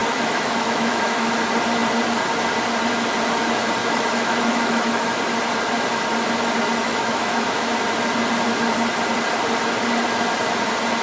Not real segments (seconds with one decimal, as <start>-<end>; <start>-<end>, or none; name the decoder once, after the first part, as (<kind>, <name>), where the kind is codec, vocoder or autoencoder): 0.0-1.3 (autoencoder, DAC-VAE); 3.8-5.2; 6.8-7.7

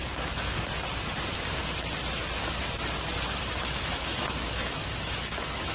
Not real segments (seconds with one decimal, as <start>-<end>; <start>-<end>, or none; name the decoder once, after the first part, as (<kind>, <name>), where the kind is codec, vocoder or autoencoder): 3.4-5.7 (autoencoder, DAC-VAE)

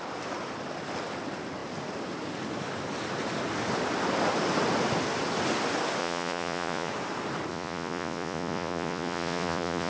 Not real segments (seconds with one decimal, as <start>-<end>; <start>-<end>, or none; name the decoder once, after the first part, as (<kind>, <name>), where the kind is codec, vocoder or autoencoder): 6.0-6.9 (vocoder, Vocos); 7.5-9.9